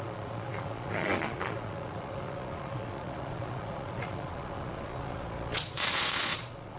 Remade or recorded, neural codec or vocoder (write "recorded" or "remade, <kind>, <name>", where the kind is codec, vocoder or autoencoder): remade, vocoder, Vocos